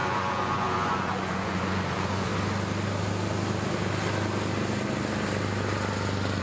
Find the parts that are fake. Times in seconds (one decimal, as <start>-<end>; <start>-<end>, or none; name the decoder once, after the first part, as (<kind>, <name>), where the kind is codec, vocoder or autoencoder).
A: 0.0-2.3 (vocoder, Vocos)

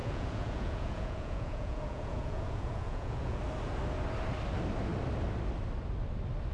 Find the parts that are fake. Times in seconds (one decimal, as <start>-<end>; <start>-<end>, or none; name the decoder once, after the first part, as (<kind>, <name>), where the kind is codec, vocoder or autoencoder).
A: 0.0-3.4 (vocoder, Vocos)

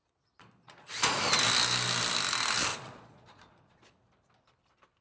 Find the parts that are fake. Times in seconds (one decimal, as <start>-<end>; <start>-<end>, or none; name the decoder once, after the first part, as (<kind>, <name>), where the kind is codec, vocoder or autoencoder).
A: 0.0-1.2 (vocoder, Vocos); 2.7-3.9

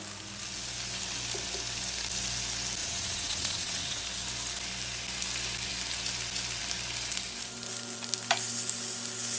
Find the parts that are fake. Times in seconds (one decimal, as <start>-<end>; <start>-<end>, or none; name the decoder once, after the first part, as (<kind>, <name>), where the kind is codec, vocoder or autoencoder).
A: 2.8-4.0 (vocoder, Vocos)

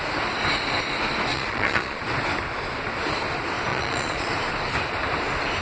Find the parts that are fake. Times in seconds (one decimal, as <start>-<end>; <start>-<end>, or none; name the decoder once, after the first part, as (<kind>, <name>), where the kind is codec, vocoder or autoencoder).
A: 1.3-2.0 (vocoder, Vocos); 3.7-4.3

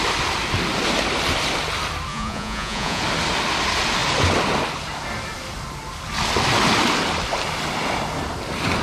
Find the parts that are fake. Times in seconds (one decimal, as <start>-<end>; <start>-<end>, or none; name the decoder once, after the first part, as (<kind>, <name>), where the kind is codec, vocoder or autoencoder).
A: 2.1-3.0 (vocoder, Vocos)

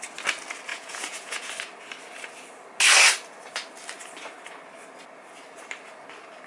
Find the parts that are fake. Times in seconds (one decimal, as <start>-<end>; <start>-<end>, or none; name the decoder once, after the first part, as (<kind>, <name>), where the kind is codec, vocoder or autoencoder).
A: 0.7-1.5 (vocoder, Vocos)

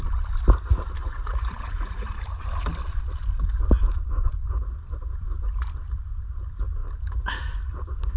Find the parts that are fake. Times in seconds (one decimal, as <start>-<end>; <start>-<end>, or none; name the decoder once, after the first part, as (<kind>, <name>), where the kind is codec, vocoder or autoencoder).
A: 1.0-2.1 (vocoder, Vocos)